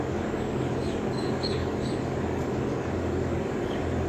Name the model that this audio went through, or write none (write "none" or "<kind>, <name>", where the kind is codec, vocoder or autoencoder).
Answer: codec, DAC